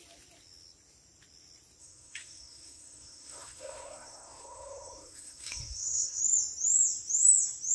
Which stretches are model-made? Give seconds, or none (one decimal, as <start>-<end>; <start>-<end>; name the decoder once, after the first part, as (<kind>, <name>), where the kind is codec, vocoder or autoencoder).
1.8-6.2 (codec, SNAC)